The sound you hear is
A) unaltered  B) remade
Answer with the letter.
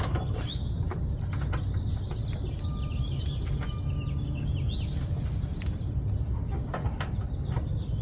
A